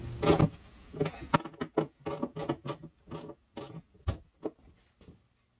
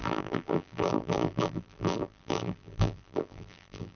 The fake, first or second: second